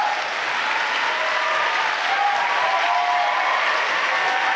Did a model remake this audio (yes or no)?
no